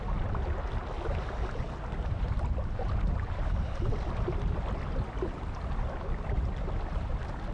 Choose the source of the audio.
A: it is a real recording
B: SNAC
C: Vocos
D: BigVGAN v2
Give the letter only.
A